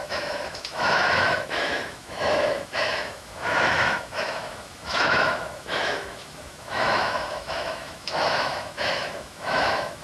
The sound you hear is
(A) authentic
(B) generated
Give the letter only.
B